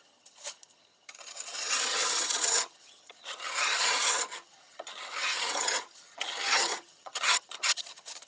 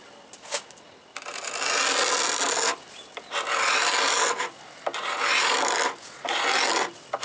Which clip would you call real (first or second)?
second